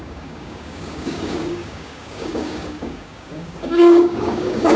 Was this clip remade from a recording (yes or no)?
yes